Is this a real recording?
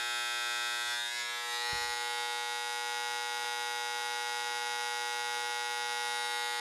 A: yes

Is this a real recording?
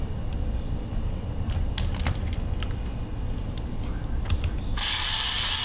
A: yes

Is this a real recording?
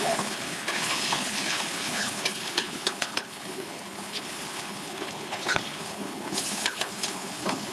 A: no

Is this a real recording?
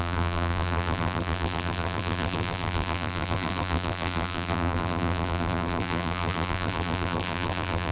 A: no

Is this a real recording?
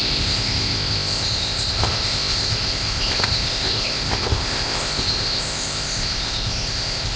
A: no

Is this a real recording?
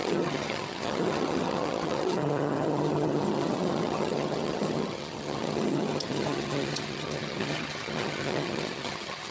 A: no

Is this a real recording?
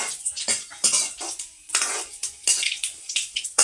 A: no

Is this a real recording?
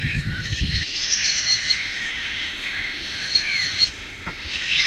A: no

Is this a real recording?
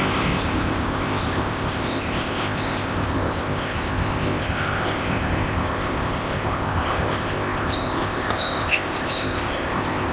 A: no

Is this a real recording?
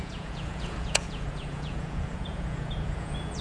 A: no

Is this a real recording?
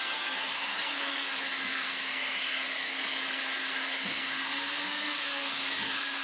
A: no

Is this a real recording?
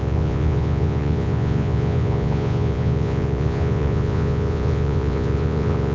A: no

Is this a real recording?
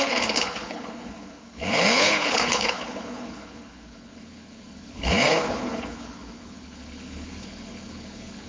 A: no